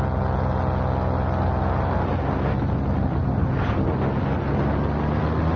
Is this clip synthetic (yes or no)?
no